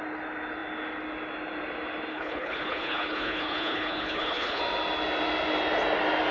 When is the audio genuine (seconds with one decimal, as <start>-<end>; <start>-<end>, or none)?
0.0-2.1; 4.6-6.3